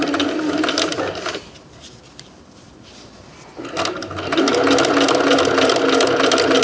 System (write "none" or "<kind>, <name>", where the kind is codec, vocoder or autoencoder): none